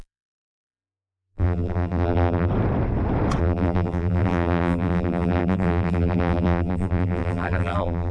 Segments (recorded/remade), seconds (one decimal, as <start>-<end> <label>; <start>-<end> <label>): 0.0-2.5 remade; 2.5-3.4 recorded; 3.4-8.1 remade